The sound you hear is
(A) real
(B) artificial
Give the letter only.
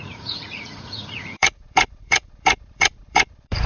B